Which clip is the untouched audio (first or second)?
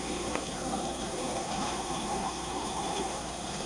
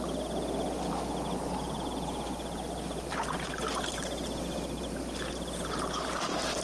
second